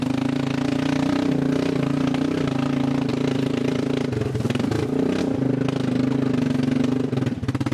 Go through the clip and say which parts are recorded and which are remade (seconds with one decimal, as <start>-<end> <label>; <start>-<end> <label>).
0.0-0.7 recorded; 0.7-1.3 remade; 1.3-3.1 recorded; 3.1-5.2 remade; 5.2-7.7 recorded